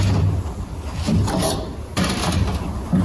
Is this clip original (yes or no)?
yes